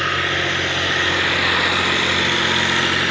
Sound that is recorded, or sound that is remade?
recorded